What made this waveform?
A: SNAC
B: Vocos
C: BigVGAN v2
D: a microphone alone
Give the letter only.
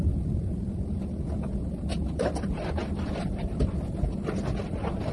C